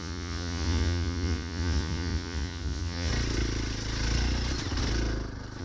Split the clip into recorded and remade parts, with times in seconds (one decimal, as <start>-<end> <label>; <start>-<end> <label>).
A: 0.0-3.1 remade; 3.1-5.6 recorded